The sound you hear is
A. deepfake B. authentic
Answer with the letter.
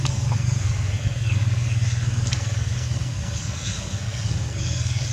A